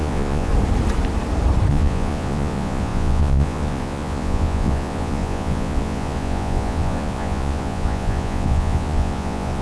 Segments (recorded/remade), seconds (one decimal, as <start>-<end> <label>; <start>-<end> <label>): 0.0-0.5 remade; 0.5-1.7 recorded; 1.7-9.6 remade